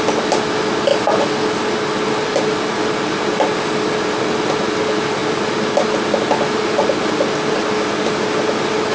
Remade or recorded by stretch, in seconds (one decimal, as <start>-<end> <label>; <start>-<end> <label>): 0.0-8.9 recorded